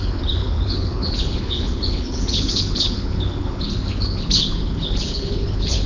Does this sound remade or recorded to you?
remade